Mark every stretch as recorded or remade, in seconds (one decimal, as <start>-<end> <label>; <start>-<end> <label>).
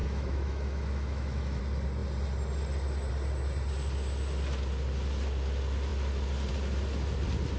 0.0-1.6 remade; 1.6-7.6 recorded